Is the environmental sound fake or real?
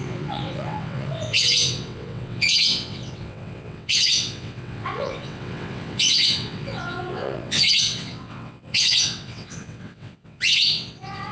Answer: fake